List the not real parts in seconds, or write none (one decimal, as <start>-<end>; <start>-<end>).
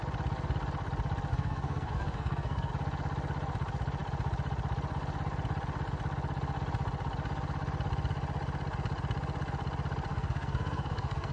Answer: 1.3-2.7; 10.1-11.3